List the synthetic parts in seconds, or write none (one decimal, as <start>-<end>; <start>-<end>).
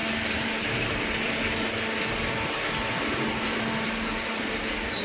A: none